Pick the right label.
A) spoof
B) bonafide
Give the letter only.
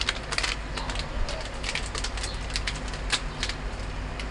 B